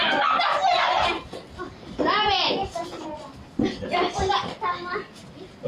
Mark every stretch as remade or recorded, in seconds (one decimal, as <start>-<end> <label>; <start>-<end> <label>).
0.0-5.7 recorded